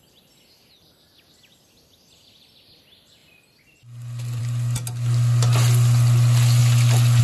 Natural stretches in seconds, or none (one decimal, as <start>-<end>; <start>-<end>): 0.0-7.2